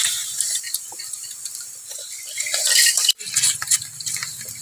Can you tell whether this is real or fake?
fake